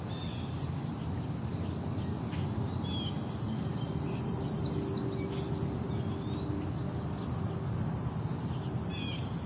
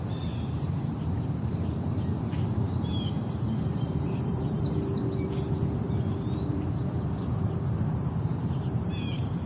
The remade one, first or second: second